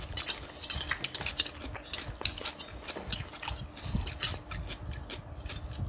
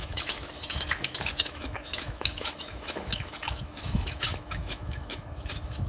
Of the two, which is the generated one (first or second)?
second